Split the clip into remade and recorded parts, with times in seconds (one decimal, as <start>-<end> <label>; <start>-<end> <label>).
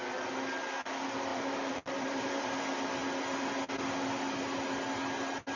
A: 0.0-1.3 recorded; 1.3-2.5 remade; 2.5-5.6 recorded